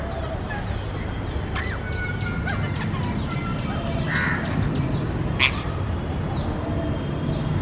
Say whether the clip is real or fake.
real